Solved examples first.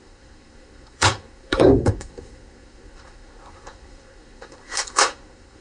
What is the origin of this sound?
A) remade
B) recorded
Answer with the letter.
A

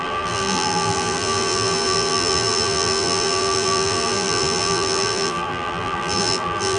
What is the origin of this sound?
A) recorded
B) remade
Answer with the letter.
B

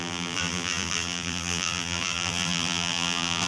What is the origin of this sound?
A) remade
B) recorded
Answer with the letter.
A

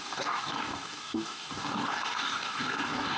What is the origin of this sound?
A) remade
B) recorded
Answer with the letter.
A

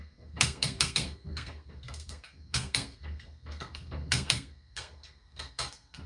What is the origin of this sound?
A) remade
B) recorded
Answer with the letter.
A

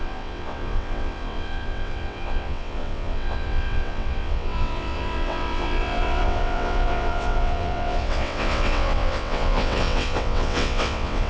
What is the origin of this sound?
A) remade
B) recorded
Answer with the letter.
A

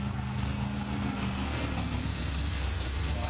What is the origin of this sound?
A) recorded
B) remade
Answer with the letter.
B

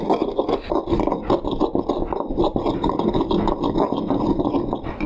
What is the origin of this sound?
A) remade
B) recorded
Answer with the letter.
B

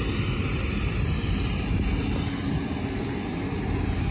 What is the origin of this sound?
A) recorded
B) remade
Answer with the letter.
A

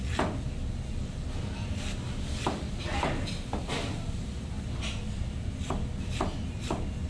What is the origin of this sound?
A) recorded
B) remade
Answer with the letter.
A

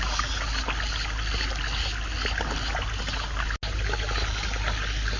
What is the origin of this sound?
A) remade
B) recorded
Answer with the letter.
B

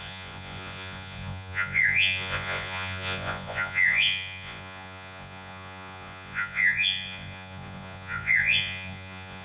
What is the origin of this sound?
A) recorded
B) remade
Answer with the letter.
B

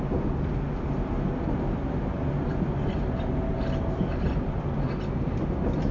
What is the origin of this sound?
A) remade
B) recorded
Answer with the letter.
B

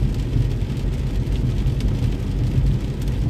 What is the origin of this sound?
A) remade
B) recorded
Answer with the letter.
B